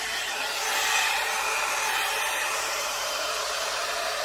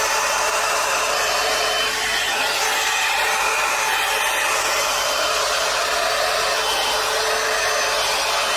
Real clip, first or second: second